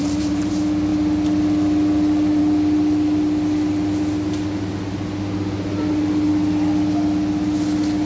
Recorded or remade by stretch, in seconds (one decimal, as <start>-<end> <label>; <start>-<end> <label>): 0.0-0.5 remade; 0.5-8.1 recorded